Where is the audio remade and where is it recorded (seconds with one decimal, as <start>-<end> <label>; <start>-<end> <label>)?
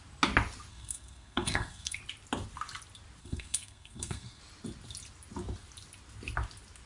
0.0-0.7 recorded; 0.7-2.0 remade; 2.0-3.2 recorded; 3.2-4.4 remade; 4.4-6.9 recorded